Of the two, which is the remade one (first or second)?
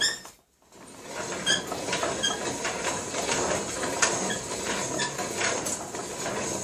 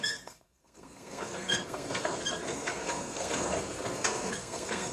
second